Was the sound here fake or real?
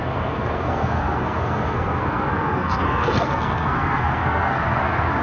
fake